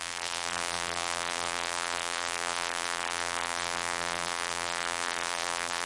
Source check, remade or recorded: remade